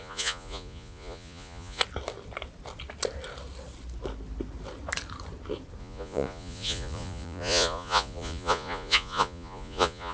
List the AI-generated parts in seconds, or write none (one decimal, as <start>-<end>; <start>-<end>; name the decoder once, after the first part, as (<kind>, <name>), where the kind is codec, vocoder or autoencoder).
0.0-1.8 (vocoder, Vocos); 5.8-10.1